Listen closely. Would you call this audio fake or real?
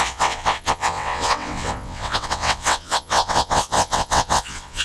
fake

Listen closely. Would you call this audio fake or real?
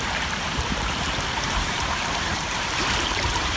fake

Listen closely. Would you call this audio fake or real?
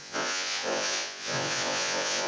fake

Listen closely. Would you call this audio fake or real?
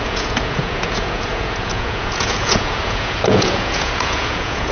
fake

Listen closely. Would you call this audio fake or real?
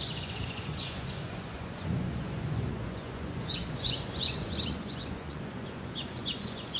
fake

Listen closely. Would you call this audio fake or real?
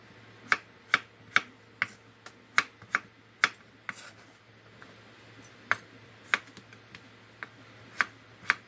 real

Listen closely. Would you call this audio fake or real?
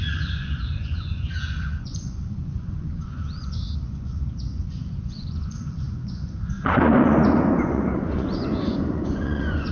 fake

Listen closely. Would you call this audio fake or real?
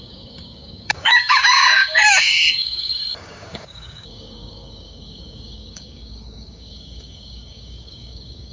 fake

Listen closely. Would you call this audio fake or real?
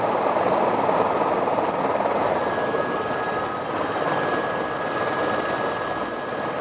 real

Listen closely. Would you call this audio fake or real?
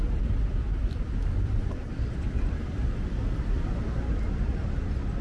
fake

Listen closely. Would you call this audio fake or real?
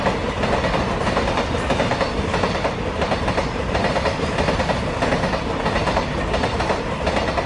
real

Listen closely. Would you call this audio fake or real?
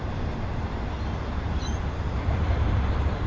real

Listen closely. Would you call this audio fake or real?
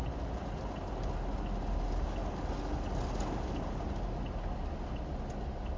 real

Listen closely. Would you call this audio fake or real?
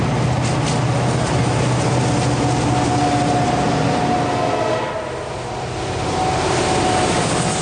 real